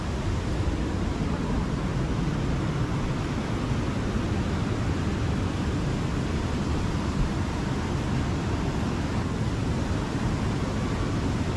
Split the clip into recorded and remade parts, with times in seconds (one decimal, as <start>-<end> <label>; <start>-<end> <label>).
0.0-11.6 recorded